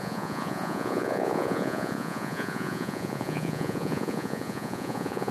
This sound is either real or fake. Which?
fake